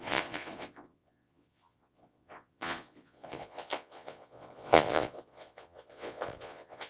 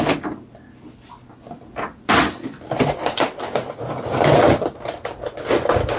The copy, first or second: first